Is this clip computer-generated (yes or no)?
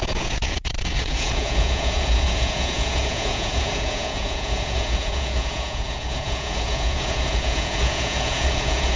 yes